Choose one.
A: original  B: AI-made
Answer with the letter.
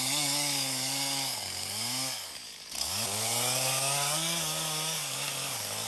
B